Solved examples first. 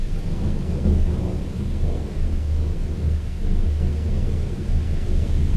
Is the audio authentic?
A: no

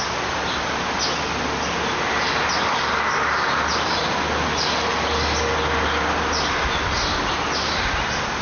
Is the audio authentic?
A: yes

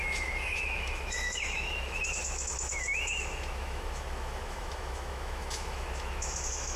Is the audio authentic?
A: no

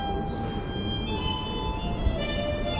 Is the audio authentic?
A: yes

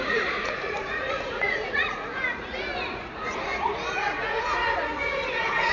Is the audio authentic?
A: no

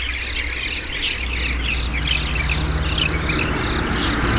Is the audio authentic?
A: yes